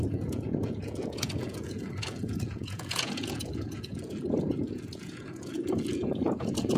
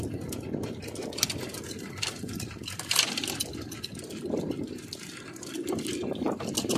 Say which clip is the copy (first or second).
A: first